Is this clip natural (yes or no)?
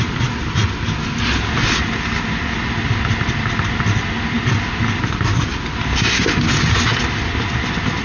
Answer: yes